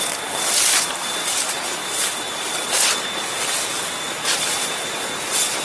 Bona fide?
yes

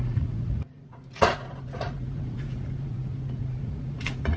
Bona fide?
no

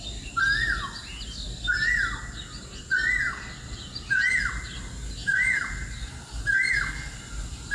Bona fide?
yes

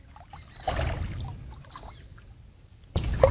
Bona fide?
yes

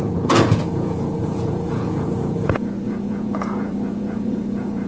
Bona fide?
no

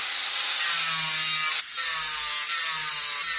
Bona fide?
yes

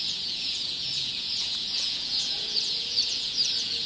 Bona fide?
no